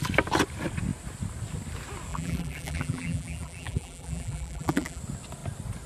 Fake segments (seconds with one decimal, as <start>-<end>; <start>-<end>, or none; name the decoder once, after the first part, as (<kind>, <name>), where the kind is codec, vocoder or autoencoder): 2.1-5.0 (vocoder, BigVGAN v2)